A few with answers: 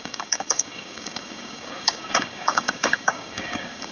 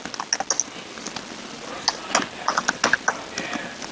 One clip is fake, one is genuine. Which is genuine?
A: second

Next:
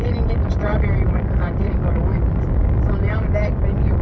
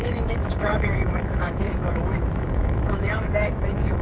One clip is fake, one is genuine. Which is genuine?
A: first